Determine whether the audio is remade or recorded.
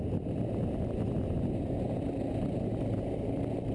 recorded